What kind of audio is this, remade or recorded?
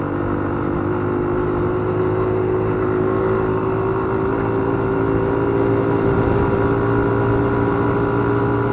recorded